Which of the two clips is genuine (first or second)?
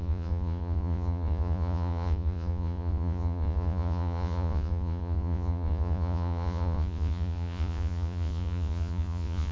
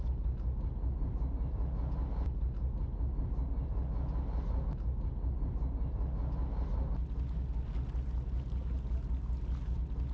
second